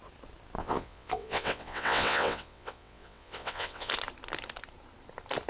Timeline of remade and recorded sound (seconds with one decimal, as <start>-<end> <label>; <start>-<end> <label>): 0.0-0.6 recorded; 0.6-3.9 remade; 3.9-5.5 recorded